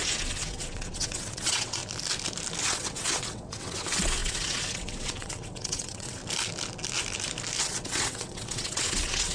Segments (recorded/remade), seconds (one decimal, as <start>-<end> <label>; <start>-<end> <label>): 0.0-1.8 remade; 1.8-2.6 recorded; 2.6-6.2 remade; 6.2-7.6 recorded; 7.6-9.3 remade